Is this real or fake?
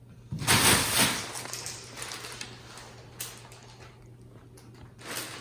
real